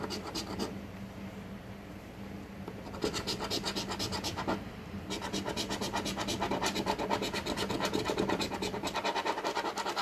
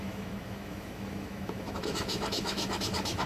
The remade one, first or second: second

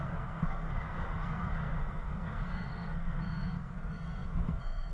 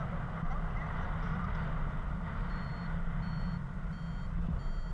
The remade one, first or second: first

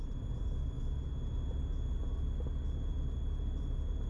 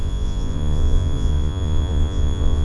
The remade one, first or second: second